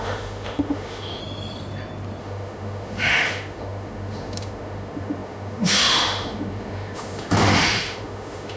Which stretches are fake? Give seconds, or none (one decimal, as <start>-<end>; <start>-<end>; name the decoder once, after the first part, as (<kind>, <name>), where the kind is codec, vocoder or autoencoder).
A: 0.0-1.2 (autoencoder, DAC-VAE); 2.2-8.6